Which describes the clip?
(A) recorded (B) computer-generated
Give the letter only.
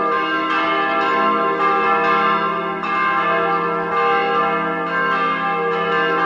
A